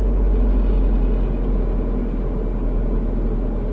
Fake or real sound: real